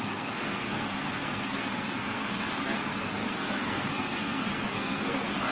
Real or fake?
fake